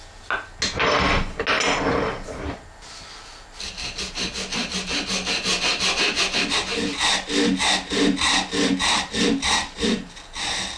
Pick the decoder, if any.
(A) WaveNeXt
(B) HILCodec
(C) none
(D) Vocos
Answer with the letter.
C